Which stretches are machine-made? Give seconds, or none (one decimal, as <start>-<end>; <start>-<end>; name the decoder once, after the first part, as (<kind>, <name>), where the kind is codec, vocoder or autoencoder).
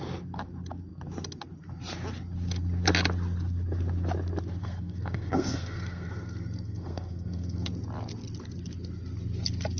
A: 4.6-7.7 (codec, SNAC)